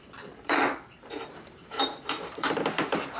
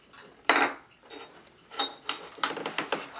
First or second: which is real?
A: second